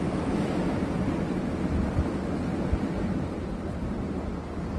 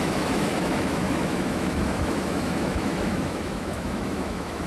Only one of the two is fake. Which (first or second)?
second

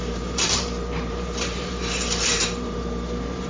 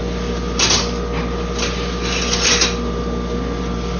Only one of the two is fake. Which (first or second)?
first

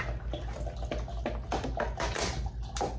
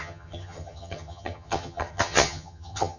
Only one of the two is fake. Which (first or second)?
second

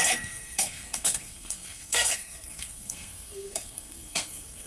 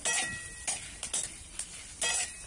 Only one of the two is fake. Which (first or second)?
first